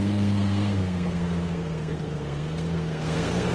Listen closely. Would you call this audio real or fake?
fake